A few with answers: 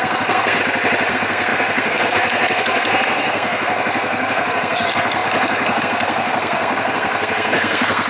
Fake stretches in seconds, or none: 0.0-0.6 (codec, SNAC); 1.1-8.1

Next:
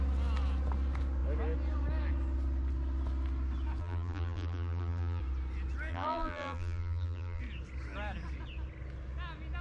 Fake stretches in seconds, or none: 3.8-5.2 (vocoder, BigVGAN v2); 5.9-7.4